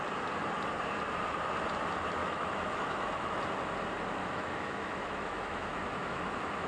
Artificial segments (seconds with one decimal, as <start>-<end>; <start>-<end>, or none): 2.2-3.4; 4.2-6.7